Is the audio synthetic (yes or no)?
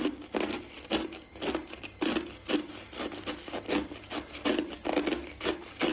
no